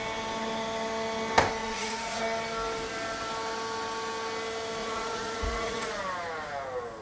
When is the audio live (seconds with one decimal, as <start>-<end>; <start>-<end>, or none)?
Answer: 0.0-1.6; 2.2-4.8; 6.0-7.0